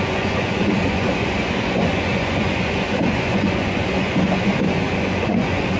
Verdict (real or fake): fake